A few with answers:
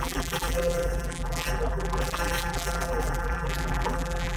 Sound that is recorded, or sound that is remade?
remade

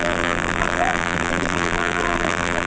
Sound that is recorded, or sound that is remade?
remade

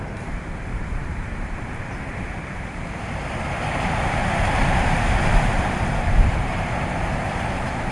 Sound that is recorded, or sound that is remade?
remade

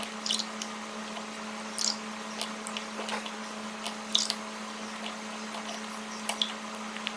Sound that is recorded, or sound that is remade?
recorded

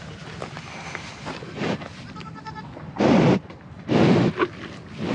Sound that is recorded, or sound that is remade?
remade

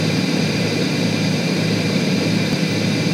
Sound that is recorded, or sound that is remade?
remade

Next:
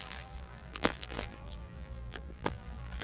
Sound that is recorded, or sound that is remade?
remade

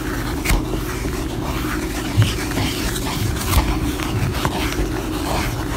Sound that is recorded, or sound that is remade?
recorded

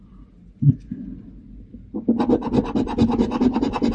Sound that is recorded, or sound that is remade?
recorded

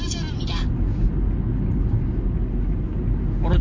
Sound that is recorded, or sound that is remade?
recorded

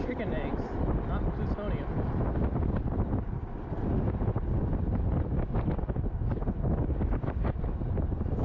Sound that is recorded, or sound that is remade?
recorded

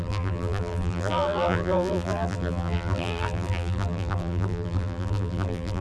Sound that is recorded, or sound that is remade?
remade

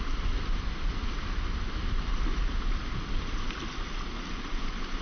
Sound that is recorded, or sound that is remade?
remade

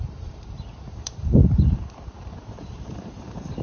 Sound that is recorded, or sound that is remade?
remade